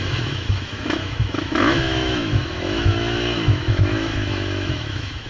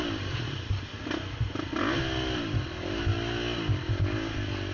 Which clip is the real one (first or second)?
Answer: second